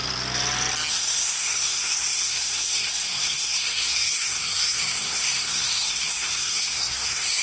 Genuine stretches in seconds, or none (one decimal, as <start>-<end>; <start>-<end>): 0.0-0.9

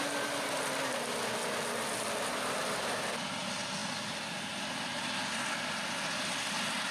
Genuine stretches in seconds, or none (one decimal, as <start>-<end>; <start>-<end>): 0.0-6.9